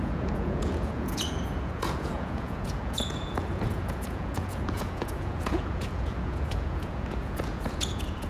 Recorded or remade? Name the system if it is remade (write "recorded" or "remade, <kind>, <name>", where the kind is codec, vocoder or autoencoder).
remade, vocoder, Vocos